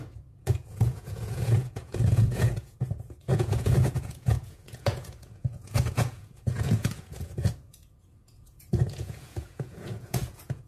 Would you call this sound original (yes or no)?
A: no